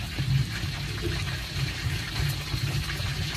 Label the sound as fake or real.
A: real